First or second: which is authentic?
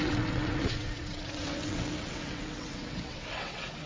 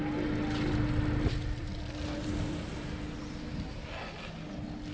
second